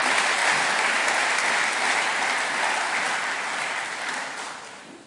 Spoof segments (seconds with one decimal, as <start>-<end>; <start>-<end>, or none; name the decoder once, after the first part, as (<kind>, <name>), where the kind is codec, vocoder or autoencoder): 0.0-0.4 (vocoder, BigVGAN v2); 3.2-5.1